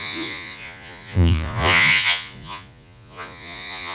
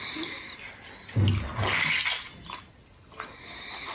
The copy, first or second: first